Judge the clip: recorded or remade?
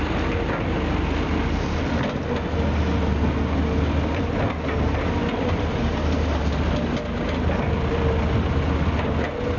recorded